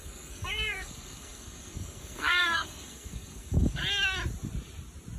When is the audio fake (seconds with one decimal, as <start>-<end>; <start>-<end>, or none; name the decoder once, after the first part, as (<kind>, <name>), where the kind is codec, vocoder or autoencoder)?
0.0-3.8 (codec, SNAC)